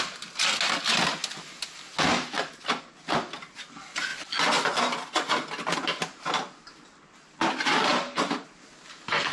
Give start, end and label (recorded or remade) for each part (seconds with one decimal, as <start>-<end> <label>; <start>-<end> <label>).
0.0-7.9 recorded; 7.9-8.5 remade; 8.5-9.3 recorded